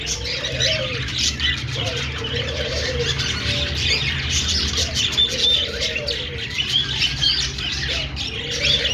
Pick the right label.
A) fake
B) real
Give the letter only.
B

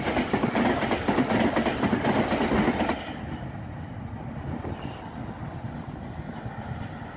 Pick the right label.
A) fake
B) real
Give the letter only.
B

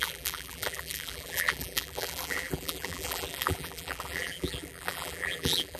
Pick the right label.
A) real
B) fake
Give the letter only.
B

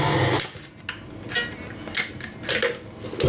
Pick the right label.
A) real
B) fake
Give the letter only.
A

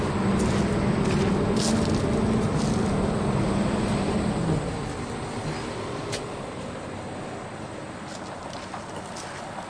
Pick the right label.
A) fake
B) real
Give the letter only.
B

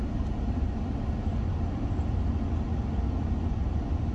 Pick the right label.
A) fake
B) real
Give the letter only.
B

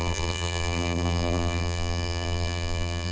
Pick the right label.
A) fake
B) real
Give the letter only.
A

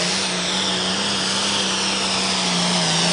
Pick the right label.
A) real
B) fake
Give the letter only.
A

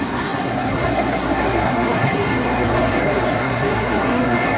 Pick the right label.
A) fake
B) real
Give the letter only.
A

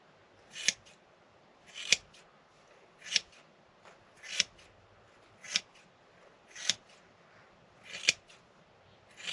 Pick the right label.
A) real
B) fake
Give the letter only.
A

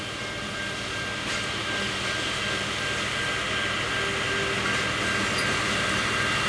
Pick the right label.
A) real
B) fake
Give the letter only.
A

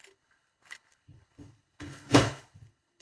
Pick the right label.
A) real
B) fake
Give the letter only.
B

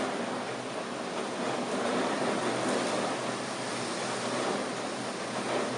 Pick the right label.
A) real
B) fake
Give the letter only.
A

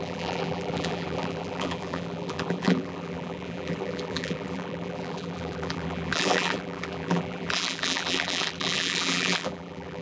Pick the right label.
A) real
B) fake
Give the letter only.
B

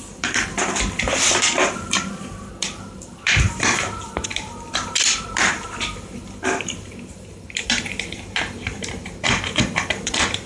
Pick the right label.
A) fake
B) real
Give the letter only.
A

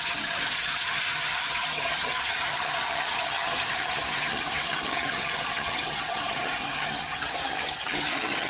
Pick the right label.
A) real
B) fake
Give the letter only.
B